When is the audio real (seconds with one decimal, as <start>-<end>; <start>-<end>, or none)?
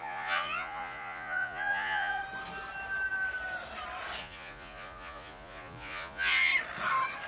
2.2-4.2; 6.5-7.3